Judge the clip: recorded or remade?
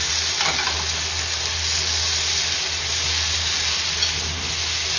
recorded